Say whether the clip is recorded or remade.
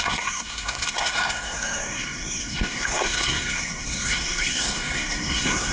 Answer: remade